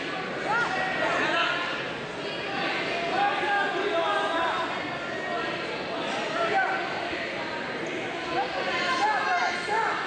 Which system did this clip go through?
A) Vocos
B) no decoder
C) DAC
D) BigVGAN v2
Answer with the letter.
B